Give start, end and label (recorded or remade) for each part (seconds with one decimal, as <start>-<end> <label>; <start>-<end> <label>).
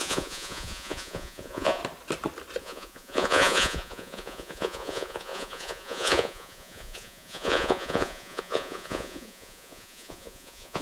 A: 0.0-1.8 remade; 1.8-2.6 recorded; 2.6-10.8 remade